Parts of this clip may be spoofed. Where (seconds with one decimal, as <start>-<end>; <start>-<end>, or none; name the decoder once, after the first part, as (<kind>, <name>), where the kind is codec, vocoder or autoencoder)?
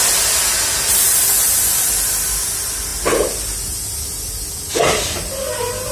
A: none